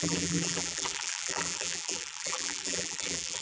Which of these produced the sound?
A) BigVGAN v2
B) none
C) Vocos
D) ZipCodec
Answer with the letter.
A